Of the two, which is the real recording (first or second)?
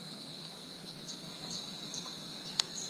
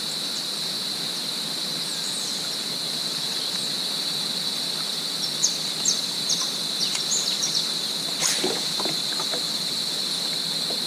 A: second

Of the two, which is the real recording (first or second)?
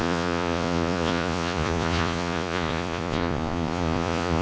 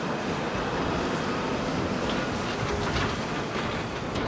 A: second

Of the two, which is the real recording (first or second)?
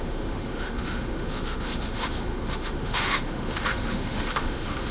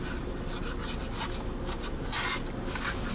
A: second